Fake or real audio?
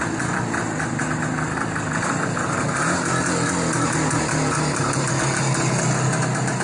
real